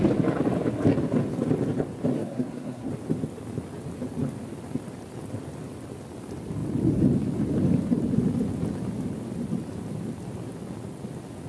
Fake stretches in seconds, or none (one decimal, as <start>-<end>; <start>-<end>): 2.1-2.9